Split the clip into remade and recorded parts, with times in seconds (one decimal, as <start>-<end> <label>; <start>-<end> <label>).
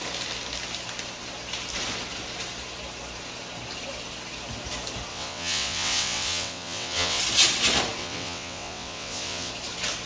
0.0-5.1 recorded; 5.1-7.2 remade; 7.2-8.0 recorded; 8.0-9.5 remade; 9.5-10.1 recorded